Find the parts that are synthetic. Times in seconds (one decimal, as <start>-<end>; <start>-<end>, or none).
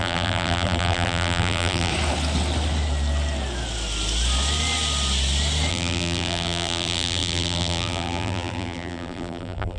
0.0-1.9; 5.7-9.8